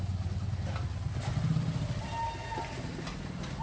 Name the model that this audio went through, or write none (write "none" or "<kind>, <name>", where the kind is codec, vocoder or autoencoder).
none